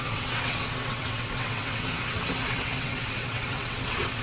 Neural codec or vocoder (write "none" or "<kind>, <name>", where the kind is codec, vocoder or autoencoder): vocoder, WaveNeXt